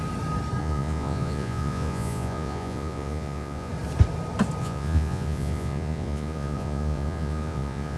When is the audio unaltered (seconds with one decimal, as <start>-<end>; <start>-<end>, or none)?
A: 0.0-0.6; 3.7-4.6